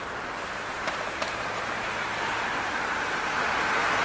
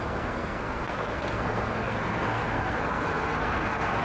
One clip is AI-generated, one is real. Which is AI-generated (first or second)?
second